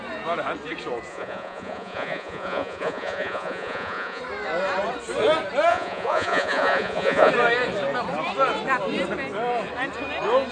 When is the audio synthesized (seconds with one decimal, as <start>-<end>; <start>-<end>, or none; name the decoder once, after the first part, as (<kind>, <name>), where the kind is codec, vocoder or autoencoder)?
1.1-4.2 (vocoder, Vocos); 5.7-7.3